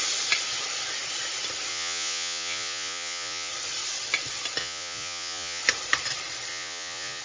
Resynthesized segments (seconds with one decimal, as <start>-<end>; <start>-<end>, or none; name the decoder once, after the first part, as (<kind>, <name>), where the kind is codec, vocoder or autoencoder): 1.7-3.5 (vocoder, Vocos); 4.6-5.6; 6.5-7.2